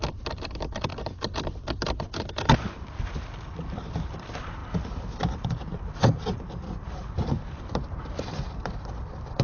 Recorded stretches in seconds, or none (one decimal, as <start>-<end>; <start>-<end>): 0.9-3.2; 4.6-5.2